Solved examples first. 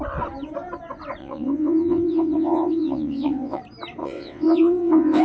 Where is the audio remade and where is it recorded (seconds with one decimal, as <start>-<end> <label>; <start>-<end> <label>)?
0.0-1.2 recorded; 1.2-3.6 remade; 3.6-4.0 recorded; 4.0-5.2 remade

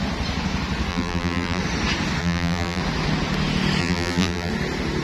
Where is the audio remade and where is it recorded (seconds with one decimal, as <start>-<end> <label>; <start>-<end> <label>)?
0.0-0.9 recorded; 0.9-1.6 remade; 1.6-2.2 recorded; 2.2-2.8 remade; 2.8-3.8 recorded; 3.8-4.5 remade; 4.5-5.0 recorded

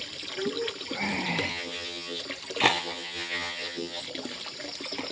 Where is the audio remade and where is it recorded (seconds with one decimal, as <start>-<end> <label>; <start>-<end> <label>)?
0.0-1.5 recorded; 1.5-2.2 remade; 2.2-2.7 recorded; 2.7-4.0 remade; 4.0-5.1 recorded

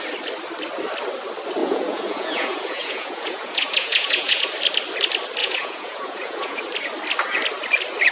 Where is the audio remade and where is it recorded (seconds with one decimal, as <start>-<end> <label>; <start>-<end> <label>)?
0.0-1.6 recorded; 1.6-4.5 remade; 4.5-5.4 recorded; 5.4-6.6 remade; 6.6-8.1 recorded

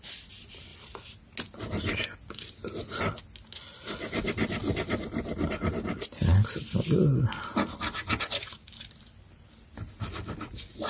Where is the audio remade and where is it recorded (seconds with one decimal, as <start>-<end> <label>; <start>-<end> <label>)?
0.0-10.9 recorded

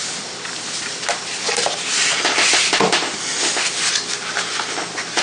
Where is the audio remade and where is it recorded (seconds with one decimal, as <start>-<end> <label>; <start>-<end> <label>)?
0.0-2.9 remade; 2.9-5.2 recorded

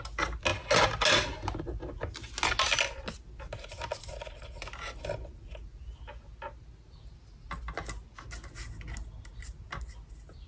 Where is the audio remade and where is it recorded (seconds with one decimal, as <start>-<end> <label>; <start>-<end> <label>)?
0.0-10.5 recorded